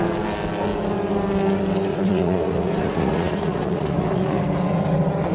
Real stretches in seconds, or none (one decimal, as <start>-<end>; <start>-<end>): 0.0-1.9; 4.4-5.3